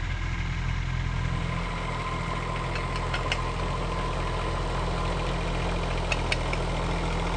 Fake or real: real